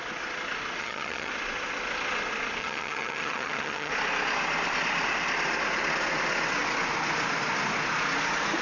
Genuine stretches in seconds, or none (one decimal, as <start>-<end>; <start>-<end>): 0.0-0.8; 1.3-2.6; 3.9-8.6